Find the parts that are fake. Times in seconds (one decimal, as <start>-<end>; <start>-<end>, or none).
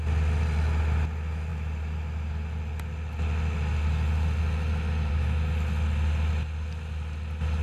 none